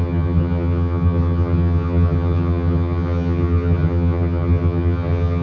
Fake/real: fake